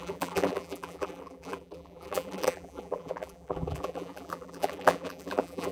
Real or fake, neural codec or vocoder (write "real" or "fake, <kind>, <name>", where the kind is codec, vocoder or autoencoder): fake, vocoder, BigVGAN v2